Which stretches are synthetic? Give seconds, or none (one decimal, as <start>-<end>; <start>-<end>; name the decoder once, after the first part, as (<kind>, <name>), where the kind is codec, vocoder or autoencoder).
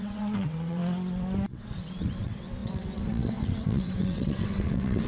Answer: 0.0-0.8 (vocoder, WaveNeXt); 1.5-5.1